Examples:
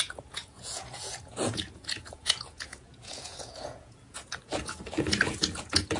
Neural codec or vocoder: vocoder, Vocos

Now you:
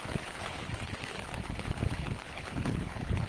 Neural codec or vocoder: codec, HILCodec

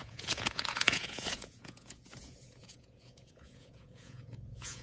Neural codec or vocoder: vocoder, Vocos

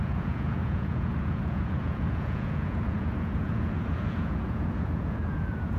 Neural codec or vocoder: vocoder, Vocos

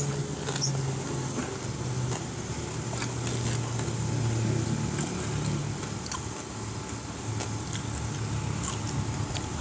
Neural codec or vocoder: none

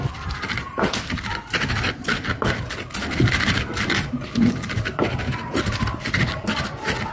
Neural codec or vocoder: none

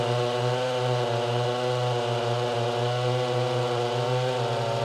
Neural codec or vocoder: none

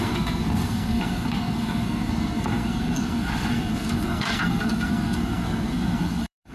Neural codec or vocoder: codec, SNAC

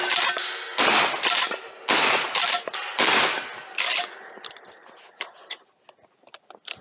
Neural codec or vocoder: none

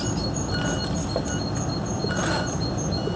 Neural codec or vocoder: none